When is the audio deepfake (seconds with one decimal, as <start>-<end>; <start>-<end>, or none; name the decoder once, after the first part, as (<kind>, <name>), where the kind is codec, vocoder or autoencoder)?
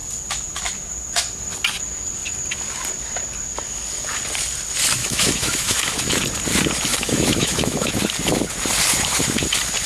5.0-6.0 (autoencoder, DAC-VAE); 6.9-7.9